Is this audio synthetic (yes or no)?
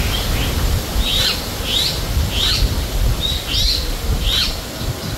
no